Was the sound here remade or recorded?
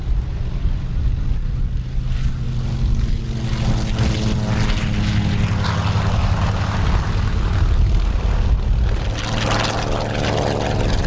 recorded